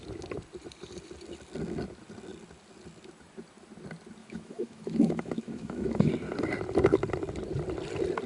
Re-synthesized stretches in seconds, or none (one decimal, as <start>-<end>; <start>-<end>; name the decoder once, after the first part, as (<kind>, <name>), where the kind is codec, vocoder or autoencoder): 4.2-6.1 (autoencoder, DAC-VAE)